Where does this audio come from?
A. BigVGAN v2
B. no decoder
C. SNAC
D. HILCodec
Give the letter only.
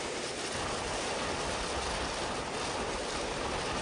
B